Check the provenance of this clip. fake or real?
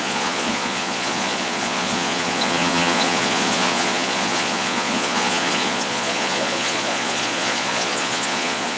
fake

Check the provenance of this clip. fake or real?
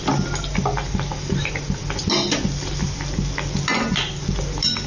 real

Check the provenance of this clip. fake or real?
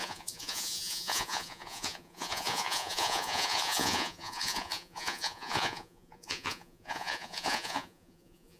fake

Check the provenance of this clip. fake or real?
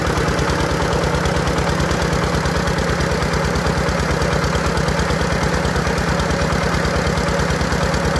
real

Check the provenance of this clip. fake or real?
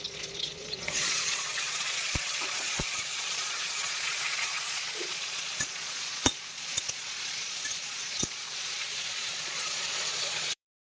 fake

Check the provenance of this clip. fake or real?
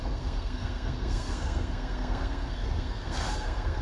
fake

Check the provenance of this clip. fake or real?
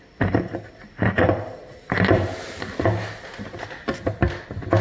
real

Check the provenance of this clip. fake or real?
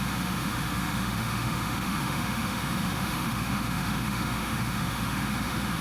fake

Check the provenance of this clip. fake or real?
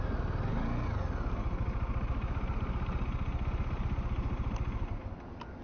real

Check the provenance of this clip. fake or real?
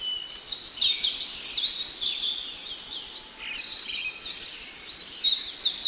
real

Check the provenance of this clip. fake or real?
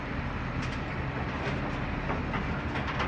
real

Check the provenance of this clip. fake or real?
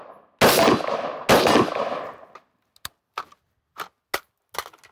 real